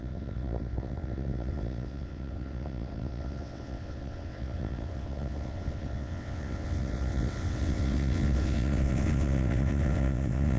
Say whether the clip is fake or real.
fake